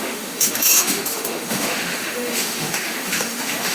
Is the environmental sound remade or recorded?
remade